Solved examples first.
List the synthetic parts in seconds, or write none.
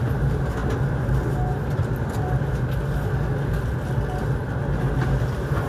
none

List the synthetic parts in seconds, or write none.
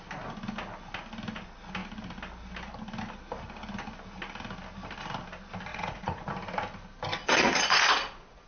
5.7-6.3; 7.2-8.5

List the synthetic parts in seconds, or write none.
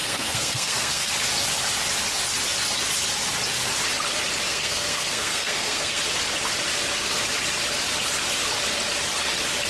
0.0-1.1; 4.5-6.0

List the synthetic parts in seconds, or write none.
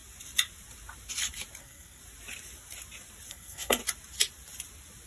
1.6-2.0; 3.3-3.8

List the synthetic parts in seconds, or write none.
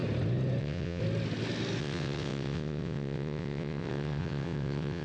0.6-1.0; 1.8-5.0